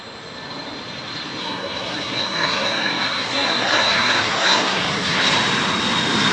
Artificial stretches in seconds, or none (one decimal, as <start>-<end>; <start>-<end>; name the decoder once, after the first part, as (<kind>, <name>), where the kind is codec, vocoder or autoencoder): 1.4-5.2 (codec, SNAC)